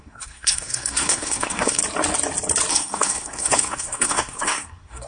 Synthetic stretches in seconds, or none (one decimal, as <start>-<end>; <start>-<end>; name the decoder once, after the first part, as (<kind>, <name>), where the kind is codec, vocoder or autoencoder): 0.0-1.8 (codec, SNAC); 2.7-5.1